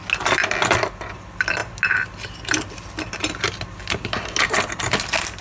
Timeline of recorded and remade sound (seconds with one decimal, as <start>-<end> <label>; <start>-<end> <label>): 0.0-5.4 recorded